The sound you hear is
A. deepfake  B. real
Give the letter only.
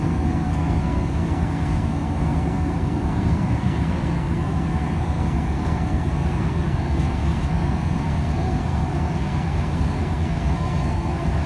A